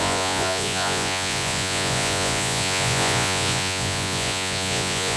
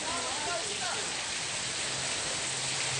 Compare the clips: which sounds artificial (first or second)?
first